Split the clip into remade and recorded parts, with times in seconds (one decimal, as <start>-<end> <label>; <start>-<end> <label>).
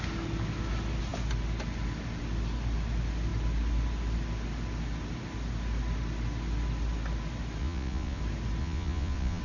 0.0-7.6 recorded; 7.6-8.2 remade; 8.2-8.6 recorded; 8.6-9.4 remade